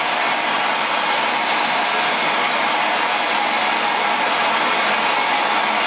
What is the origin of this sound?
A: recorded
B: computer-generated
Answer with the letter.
A